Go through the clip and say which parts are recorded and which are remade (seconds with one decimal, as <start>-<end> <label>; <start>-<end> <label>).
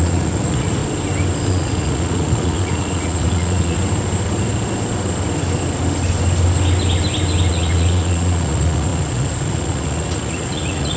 0.0-0.8 remade; 0.8-1.5 recorded; 1.5-3.8 remade; 3.8-7.5 recorded; 7.5-11.0 remade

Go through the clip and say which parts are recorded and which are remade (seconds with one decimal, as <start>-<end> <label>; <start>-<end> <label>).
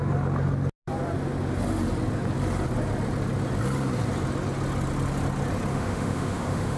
0.0-5.7 recorded; 5.7-6.8 remade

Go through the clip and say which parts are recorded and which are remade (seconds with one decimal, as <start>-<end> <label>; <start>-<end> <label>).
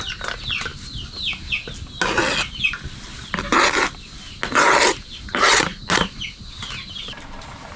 0.0-7.8 recorded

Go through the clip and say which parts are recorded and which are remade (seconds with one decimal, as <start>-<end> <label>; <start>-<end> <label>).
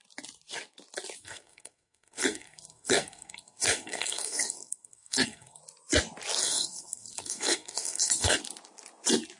0.0-1.2 recorded; 1.2-5.6 remade; 5.6-6.4 recorded; 6.4-8.4 remade; 8.4-9.4 recorded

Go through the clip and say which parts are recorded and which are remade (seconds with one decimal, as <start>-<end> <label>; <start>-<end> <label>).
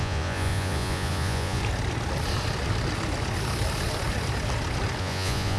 0.0-1.6 remade; 1.6-5.0 recorded; 5.0-5.6 remade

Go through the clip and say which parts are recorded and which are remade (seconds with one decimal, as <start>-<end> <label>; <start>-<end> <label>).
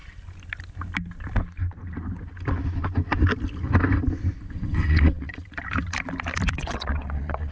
0.0-4.5 recorded; 4.5-5.3 remade; 5.3-6.5 recorded; 6.5-7.5 remade